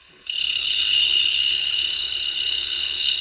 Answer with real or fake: fake